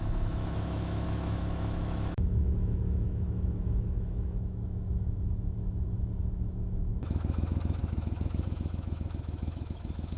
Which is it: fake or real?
fake